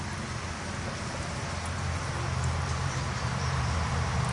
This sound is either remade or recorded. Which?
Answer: remade